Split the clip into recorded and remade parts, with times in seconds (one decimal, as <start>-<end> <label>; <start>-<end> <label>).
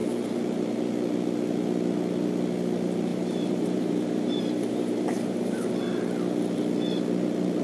0.0-3.1 recorded; 3.1-5.7 remade; 5.7-7.6 recorded